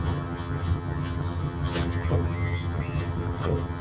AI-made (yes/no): yes